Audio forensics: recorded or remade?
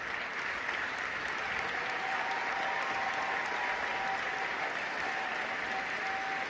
recorded